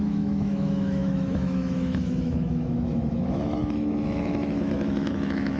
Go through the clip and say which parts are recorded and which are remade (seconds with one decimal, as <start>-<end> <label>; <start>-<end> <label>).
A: 0.0-5.6 remade